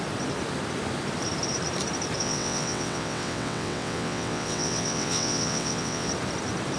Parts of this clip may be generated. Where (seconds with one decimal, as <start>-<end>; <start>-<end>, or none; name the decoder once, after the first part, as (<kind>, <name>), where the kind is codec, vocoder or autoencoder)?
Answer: 2.2-6.1 (vocoder, WaveNeXt)